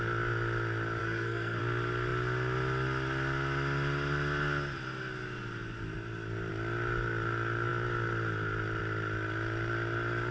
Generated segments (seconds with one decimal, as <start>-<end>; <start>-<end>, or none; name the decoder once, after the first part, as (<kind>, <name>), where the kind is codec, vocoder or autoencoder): 1.0-1.6 (codec, SNAC)